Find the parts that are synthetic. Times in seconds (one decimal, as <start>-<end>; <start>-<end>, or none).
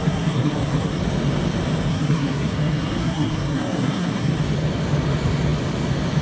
0.0-1.0; 1.9-4.3